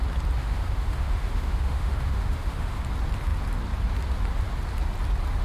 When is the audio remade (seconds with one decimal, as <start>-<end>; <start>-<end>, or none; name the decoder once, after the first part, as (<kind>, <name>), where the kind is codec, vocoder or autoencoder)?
0.4-2.8 (autoencoder, DAC-VAE)